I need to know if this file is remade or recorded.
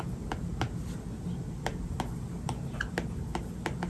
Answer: recorded